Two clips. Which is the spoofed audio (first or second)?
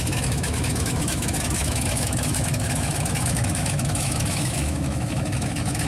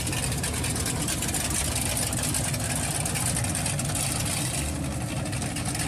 first